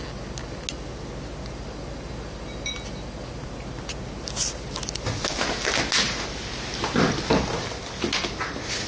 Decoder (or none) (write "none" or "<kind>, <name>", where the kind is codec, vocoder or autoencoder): none